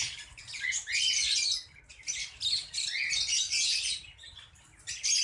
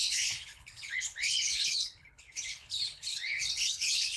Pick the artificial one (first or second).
second